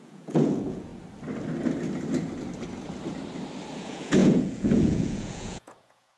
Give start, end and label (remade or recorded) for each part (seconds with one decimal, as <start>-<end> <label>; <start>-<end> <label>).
0.0-0.9 remade; 0.9-3.8 recorded; 3.8-6.2 remade